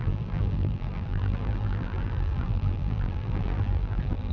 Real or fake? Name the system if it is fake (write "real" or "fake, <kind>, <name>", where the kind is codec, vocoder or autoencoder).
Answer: fake, vocoder, BigVGAN v2